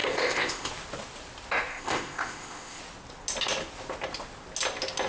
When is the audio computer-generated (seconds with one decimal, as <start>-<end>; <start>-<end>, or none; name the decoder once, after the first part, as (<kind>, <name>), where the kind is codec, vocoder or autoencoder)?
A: 0.0-0.7 (codec, ZipCodec); 1.7-2.8